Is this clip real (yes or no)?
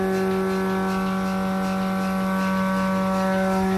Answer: yes